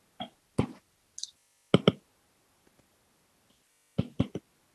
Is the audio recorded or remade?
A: recorded